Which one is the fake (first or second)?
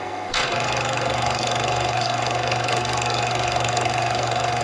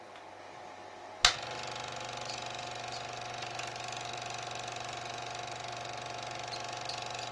first